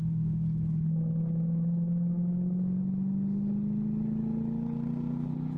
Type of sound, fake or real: real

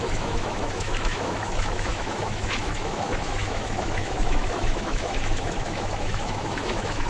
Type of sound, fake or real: fake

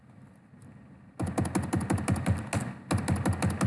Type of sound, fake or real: real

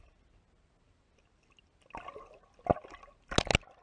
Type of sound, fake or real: real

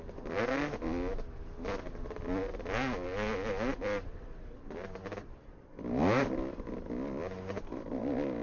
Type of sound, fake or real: real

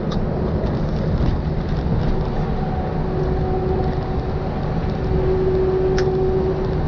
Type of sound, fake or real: real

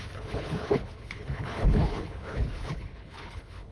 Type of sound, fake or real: fake